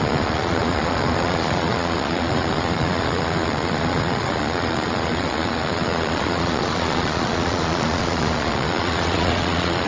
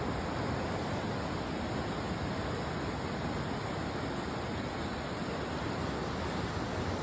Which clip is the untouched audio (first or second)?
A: second